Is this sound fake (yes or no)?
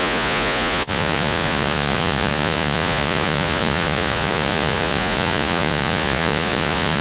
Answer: yes